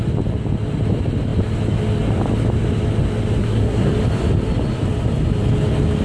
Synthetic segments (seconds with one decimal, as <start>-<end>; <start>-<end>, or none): 3.4-3.9